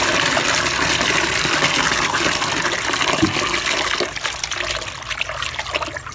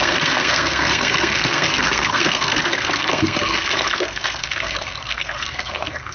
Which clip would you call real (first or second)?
first